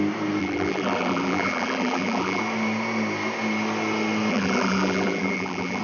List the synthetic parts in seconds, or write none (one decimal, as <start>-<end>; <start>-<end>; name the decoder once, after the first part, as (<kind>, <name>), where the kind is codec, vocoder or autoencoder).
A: 0.4-2.4 (vocoder, BigVGAN v2); 4.3-5.8